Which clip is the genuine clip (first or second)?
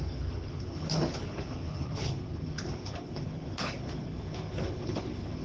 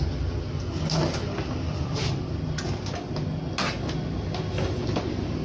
second